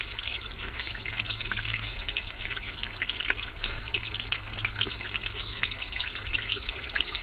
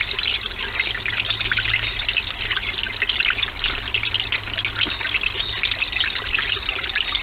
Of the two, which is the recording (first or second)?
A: second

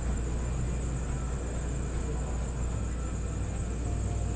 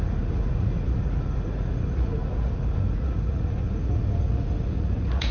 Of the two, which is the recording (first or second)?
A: first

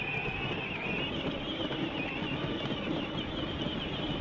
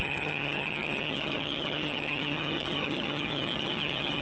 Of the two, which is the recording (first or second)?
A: first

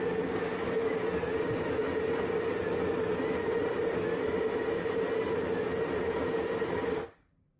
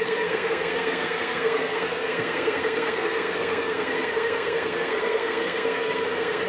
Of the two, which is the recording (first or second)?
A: first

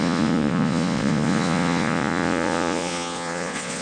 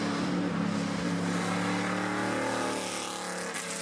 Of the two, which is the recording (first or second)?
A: second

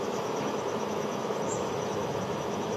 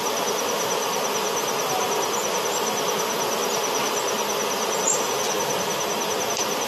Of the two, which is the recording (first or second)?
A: second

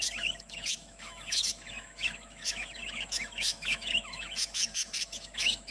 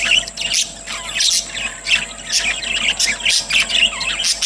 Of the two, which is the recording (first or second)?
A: second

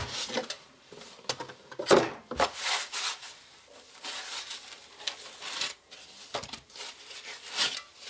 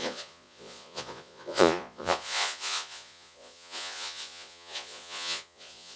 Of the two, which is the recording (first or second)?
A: first